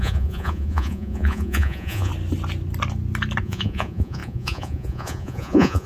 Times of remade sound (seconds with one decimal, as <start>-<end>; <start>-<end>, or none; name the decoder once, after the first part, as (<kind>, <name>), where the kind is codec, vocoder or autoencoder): 0.0-2.1 (vocoder, Vocos); 3.4-5.9